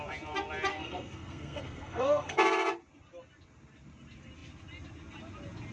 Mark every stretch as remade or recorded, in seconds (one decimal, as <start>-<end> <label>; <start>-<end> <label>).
0.0-0.7 recorded; 0.7-2.7 remade; 2.7-5.7 recorded

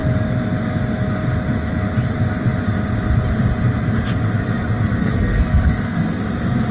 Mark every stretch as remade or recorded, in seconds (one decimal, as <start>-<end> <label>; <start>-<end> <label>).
0.0-5.0 recorded; 5.0-6.2 remade; 6.2-6.7 recorded

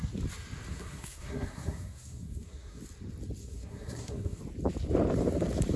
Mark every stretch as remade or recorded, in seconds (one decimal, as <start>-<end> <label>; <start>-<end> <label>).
0.0-0.7 recorded; 0.7-2.8 remade; 2.8-3.4 recorded; 3.4-4.4 remade; 4.4-5.8 recorded